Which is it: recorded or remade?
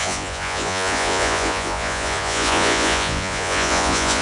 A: remade